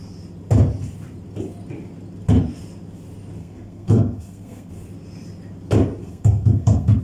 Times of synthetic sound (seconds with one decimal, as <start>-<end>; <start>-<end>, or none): 3.4-4.7; 6.0-7.0